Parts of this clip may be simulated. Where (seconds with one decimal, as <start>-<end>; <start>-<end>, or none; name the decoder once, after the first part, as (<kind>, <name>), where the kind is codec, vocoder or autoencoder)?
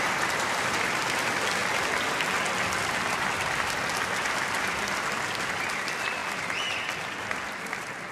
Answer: none